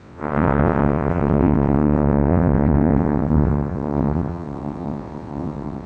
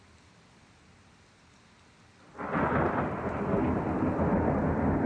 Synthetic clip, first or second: first